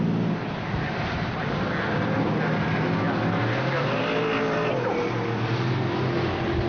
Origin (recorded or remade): recorded